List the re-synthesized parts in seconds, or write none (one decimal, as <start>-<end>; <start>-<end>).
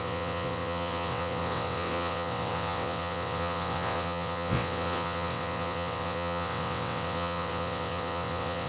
0.0-8.7